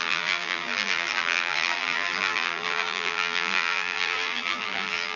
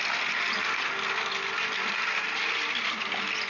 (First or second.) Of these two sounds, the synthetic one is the first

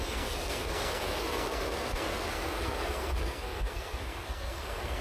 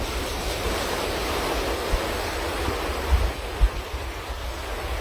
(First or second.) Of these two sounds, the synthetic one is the first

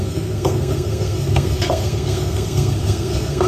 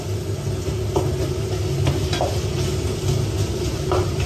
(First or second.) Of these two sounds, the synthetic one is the first